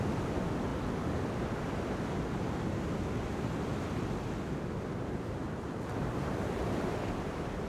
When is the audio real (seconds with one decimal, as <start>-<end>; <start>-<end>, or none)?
0.0-5.4; 6.3-7.7